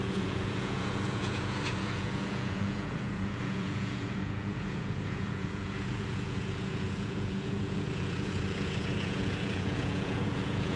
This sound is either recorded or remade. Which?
remade